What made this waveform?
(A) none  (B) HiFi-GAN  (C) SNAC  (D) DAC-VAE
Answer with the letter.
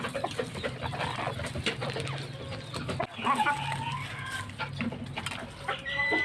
A